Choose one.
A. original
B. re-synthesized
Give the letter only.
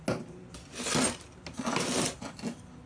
A